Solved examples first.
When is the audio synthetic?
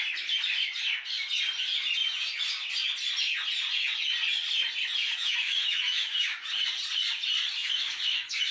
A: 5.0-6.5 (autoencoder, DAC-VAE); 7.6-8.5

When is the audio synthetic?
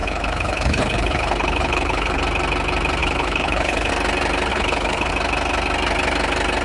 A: 0.0-2.2 (codec, HILCodec); 3.0-3.9; 4.5-5.1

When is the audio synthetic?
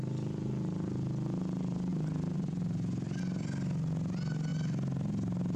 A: none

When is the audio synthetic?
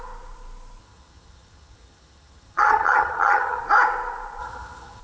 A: 0.8-3.6 (vocoder, HiFi-GAN); 4.4-5.0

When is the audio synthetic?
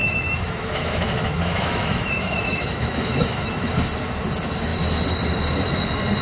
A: 0.0-3.7 (autoencoder, DAC-VAE)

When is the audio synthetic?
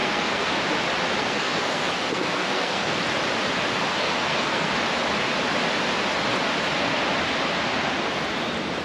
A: 0.0-0.6 (codec, SNAC); 1.2-3.0; 3.9-4.7